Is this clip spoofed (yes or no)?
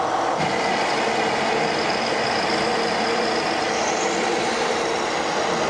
no